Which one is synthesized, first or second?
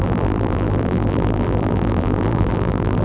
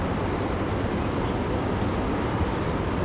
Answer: first